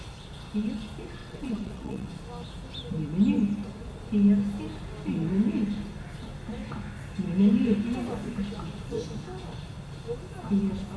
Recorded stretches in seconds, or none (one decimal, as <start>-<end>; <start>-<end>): 0.0-1.2; 2.1-11.0